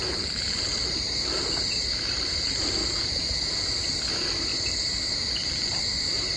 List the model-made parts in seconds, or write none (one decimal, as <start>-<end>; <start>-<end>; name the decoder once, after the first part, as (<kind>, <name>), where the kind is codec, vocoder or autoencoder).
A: 0.0-2.8 (vocoder, BigVGAN v2); 4.1-6.4

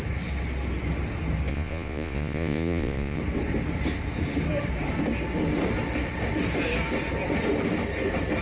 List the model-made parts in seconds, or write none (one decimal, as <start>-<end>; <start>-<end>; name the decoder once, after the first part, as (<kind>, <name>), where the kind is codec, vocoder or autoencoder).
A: 1.5-3.2 (vocoder, Vocos)

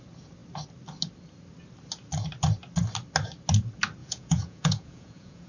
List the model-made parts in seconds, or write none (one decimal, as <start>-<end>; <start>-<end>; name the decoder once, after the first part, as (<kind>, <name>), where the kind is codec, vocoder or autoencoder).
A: 4.0-5.5 (vocoder, Vocos)